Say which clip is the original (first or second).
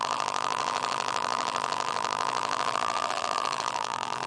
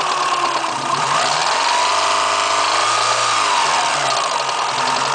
second